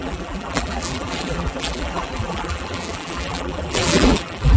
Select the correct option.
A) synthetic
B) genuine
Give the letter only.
A